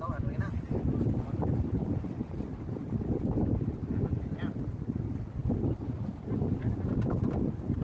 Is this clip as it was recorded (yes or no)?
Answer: yes